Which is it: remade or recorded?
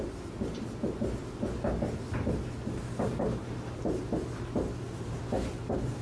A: recorded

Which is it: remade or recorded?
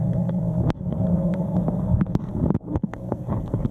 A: remade